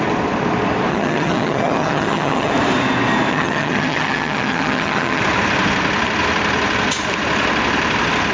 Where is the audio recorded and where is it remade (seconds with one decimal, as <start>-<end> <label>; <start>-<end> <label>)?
0.0-0.9 recorded; 0.9-2.5 remade; 2.5-3.3 recorded; 3.3-5.2 remade; 5.2-8.3 recorded